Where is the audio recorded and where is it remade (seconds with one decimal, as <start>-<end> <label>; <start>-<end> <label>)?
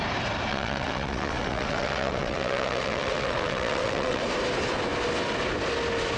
0.0-0.5 recorded; 0.5-4.2 remade; 4.2-6.2 recorded